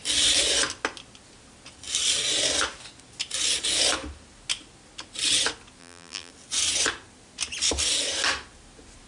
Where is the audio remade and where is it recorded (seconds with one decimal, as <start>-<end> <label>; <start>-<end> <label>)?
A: 0.0-5.8 recorded; 5.8-6.3 remade; 6.3-9.1 recorded